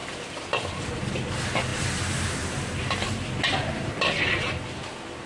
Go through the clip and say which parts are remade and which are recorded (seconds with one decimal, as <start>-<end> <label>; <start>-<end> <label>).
0.0-1.1 remade; 1.1-1.7 recorded; 1.7-4.7 remade; 4.7-5.3 recorded

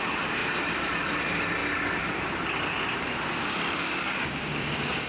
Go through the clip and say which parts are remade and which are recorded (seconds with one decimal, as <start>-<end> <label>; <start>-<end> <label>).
0.0-3.8 recorded; 3.8-5.1 remade

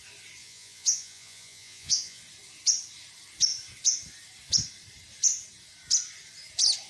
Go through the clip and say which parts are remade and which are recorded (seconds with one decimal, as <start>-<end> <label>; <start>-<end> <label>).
0.0-0.4 recorded; 0.4-2.2 remade; 2.2-6.9 recorded

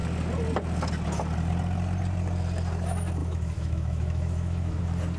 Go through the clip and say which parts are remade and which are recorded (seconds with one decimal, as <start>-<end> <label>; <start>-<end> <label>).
0.0-3.2 recorded; 3.2-4.8 remade; 4.8-5.2 recorded

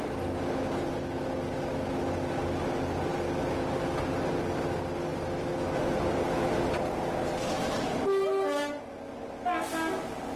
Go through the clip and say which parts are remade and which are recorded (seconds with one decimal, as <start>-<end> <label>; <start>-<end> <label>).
0.0-10.4 recorded

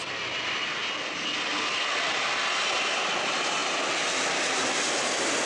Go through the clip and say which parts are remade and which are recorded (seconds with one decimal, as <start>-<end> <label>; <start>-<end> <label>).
0.0-5.5 recorded